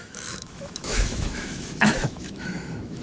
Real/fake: fake